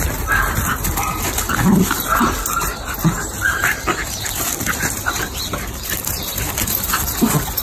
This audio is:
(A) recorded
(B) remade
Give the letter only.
A